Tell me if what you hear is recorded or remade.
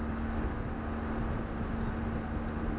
recorded